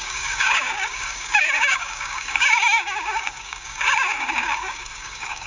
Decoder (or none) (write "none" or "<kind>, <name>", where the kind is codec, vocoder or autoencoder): codec, DAC